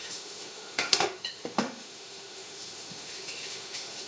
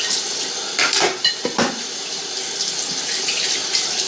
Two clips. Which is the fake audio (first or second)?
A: first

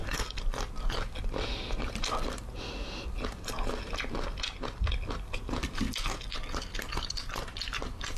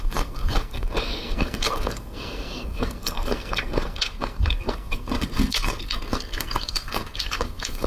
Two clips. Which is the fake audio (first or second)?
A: second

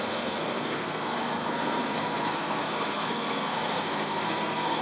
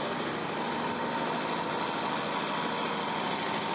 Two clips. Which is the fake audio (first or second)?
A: first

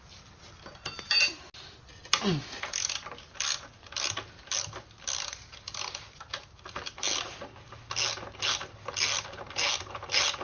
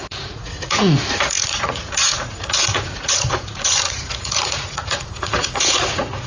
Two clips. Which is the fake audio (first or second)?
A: second